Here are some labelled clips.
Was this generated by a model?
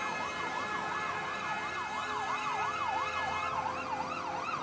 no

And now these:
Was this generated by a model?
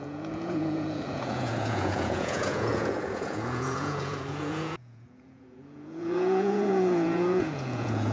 yes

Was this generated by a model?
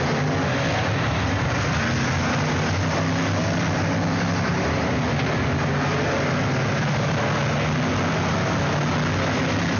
no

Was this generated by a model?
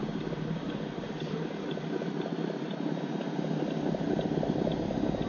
no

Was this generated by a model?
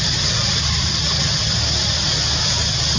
no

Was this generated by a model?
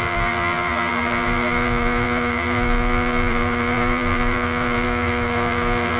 yes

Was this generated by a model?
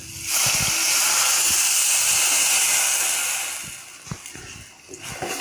no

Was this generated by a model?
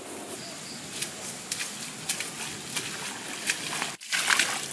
no